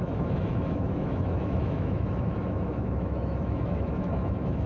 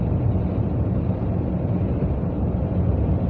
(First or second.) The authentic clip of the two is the second